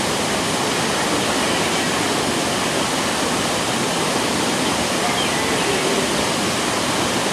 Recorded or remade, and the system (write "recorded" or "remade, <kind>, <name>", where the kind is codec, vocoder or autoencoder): recorded